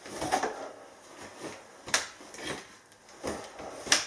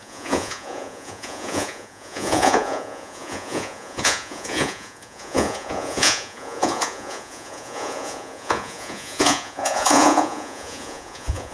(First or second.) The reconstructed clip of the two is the second